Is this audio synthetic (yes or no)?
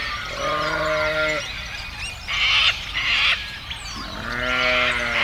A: no